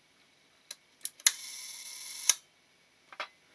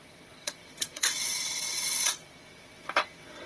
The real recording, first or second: first